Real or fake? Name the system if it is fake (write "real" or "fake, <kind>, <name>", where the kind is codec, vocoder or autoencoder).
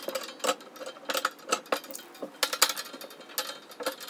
real